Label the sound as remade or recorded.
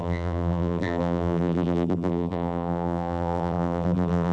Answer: remade